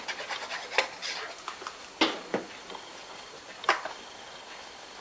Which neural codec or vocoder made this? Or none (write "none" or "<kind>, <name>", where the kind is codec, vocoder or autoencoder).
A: none